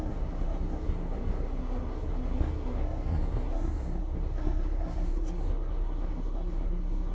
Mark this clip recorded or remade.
remade